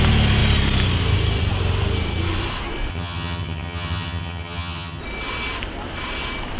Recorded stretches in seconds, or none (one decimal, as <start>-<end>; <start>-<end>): 0.0-2.9; 5.0-6.6